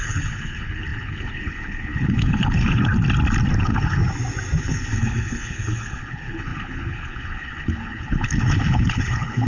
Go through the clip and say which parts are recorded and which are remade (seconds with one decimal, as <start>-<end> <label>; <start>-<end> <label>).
0.0-2.9 remade; 2.9-3.6 recorded; 3.6-4.0 remade; 4.0-4.6 recorded; 4.6-9.5 remade